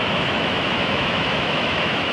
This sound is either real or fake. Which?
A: fake